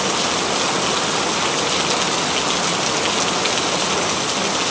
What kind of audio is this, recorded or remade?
recorded